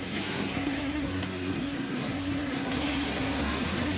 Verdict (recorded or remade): remade